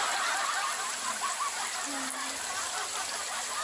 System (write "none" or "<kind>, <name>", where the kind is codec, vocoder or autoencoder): none